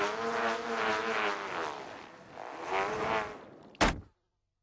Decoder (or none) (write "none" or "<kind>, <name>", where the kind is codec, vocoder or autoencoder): none